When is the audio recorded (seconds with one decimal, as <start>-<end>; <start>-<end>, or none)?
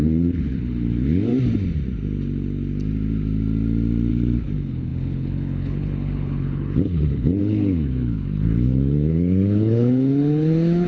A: 1.3-4.1